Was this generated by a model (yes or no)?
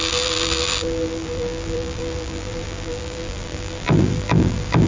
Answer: yes